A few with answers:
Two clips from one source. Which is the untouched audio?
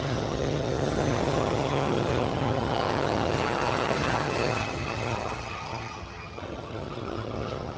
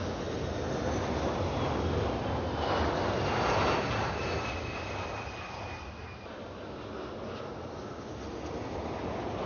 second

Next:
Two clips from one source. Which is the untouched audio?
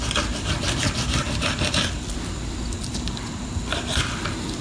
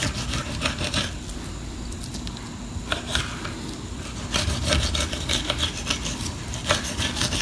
second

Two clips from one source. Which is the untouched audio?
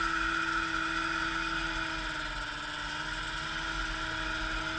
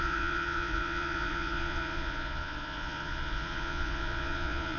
first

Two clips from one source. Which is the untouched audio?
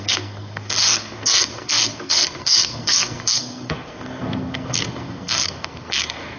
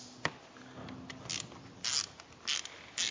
second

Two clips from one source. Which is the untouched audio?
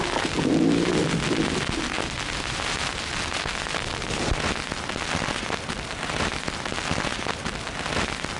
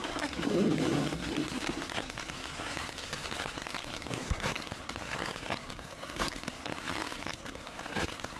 first